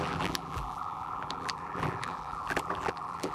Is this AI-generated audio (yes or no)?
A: yes